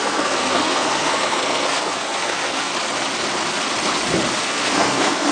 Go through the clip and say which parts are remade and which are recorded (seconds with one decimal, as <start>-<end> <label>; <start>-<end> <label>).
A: 0.0-2.7 remade; 2.7-4.4 recorded; 4.4-5.3 remade